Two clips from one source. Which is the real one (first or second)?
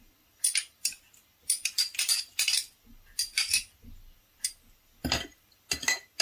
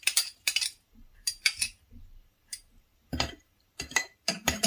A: first